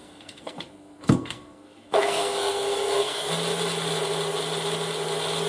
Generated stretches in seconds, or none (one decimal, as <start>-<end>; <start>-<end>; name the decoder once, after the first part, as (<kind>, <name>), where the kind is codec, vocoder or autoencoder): 0.0-3.3 (codec, SNAC)